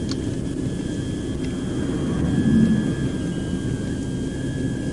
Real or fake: real